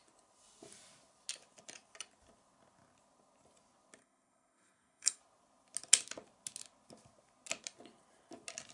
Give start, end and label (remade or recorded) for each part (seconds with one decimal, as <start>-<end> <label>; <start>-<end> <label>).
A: 0.0-4.0 recorded; 4.0-5.2 remade; 5.2-8.7 recorded